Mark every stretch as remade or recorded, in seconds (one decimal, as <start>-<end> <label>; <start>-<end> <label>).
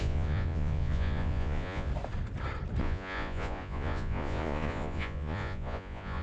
0.0-1.9 remade; 1.9-2.8 recorded; 2.8-6.2 remade